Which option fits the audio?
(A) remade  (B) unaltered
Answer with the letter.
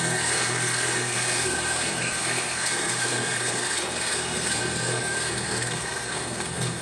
A